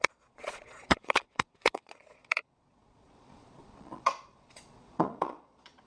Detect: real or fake fake